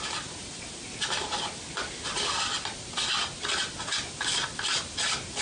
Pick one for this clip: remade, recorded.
recorded